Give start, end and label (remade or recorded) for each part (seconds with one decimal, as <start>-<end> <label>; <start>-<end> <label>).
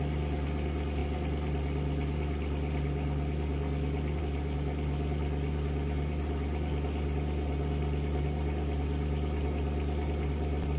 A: 0.0-10.8 recorded